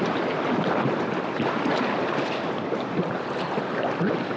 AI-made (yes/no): no